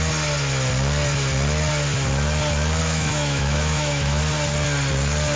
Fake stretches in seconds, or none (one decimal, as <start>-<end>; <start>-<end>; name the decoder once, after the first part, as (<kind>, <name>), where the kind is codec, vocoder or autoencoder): 2.8-4.2 (autoencoder, DAC-VAE)